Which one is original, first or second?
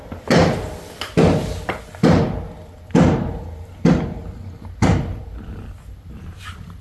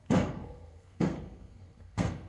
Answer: first